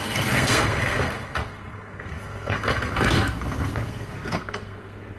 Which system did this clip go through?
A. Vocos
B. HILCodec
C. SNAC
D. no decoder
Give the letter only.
C